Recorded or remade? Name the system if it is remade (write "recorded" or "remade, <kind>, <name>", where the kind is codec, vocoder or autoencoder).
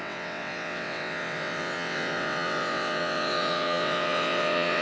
remade, vocoder, WaveNeXt